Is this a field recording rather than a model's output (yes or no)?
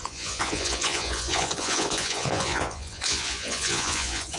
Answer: no